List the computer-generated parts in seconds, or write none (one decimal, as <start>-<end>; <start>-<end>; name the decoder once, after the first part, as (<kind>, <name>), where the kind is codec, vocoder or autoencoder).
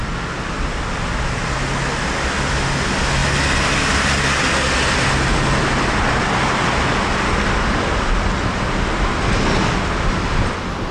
none